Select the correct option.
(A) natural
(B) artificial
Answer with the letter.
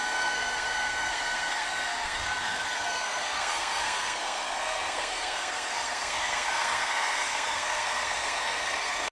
B